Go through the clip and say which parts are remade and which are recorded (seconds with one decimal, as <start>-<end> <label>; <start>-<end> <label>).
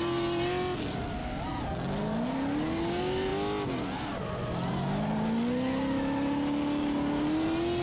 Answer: 0.0-7.8 recorded